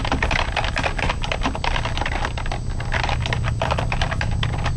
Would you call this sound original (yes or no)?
yes